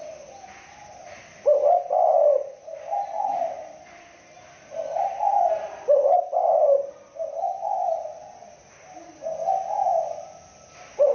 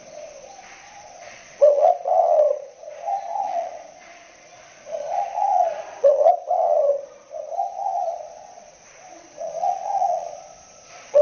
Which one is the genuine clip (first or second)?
first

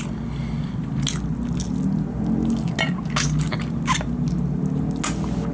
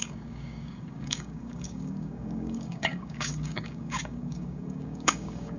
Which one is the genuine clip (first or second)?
first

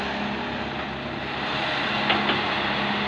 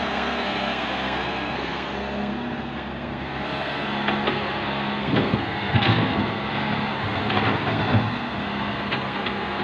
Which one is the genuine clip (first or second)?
first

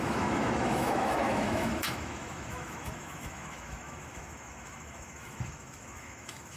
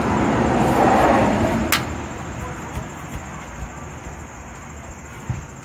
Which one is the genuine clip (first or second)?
second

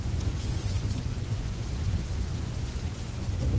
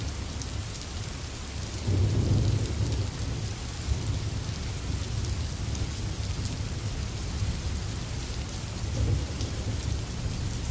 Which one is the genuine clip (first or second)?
second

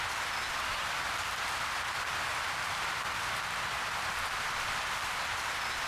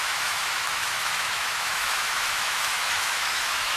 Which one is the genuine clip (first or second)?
first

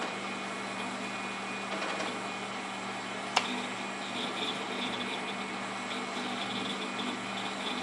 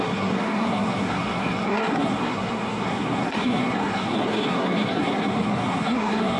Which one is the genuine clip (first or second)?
first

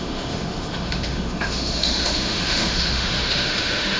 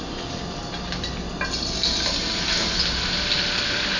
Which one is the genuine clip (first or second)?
second